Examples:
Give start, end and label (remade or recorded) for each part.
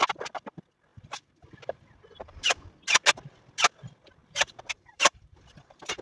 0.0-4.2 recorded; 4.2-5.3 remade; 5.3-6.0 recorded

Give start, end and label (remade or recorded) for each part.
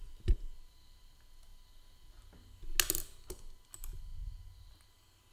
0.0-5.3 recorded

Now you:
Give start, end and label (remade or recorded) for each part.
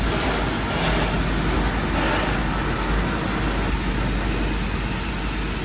0.0-5.6 recorded